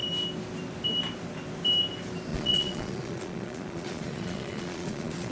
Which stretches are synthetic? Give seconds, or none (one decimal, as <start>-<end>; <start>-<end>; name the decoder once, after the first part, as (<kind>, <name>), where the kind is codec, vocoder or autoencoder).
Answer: 2.3-5.3 (vocoder, Vocos)